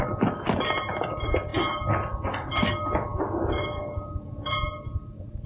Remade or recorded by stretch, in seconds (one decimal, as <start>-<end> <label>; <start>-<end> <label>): 0.0-5.5 recorded